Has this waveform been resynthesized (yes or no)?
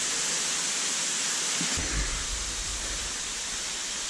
no